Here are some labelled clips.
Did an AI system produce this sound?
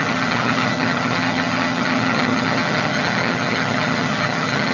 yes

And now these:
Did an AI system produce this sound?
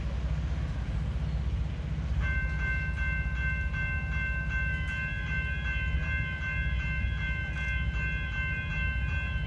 no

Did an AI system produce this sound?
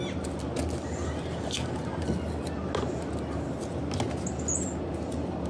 no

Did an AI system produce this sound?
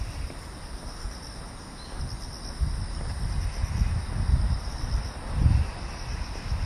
no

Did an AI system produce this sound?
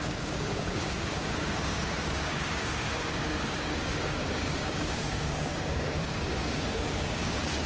yes